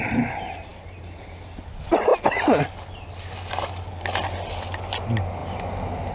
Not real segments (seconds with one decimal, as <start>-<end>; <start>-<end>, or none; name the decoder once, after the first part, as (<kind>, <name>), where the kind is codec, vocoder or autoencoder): none